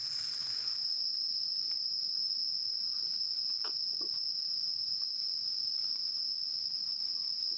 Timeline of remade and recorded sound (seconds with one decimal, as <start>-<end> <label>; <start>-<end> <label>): 0.0-1.1 recorded; 1.1-2.4 remade; 2.4-4.8 recorded; 4.8-7.6 remade